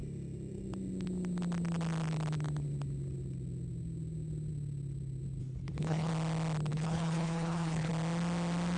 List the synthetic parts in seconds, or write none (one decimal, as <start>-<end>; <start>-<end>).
5.4-6.1; 6.7-7.9